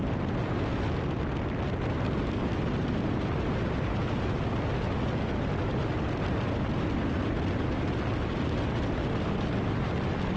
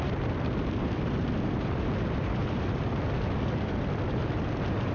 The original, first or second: first